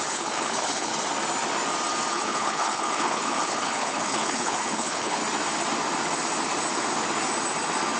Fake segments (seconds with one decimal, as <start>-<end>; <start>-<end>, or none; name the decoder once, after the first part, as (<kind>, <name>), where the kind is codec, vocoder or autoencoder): 0.0-0.9 (codec, HILCodec); 2.1-5.2